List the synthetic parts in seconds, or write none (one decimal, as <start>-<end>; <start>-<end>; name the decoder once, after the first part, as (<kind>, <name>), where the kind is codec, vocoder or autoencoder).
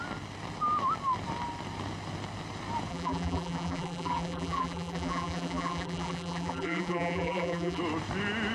2.9-7.8 (vocoder, BigVGAN v2)